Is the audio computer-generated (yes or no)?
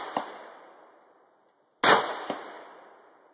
no